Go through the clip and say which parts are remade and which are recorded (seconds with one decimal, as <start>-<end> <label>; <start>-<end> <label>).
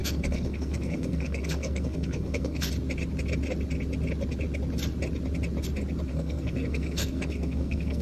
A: 0.0-2.7 remade; 2.7-6.1 recorded; 6.1-8.0 remade